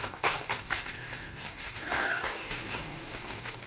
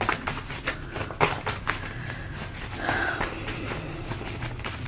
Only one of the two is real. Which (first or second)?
second